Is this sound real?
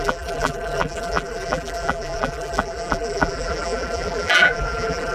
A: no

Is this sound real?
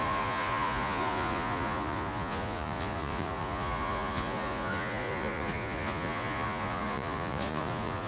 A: no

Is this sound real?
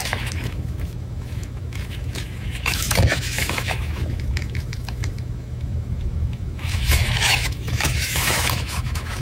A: no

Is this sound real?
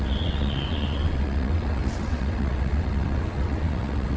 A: no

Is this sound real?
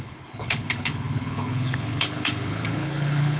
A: no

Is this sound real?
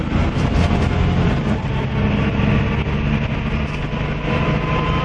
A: yes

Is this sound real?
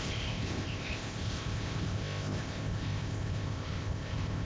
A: no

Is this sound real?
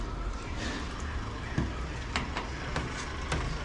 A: yes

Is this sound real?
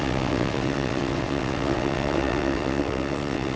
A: no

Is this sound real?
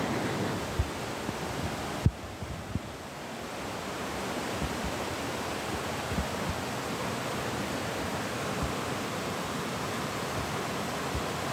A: yes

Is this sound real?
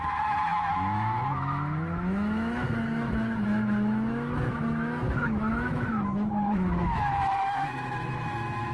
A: no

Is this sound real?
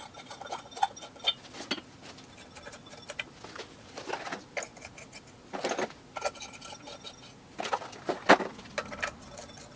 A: yes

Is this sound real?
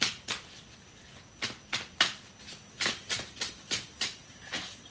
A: yes